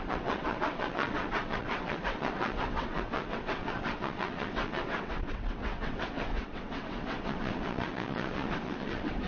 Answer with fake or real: fake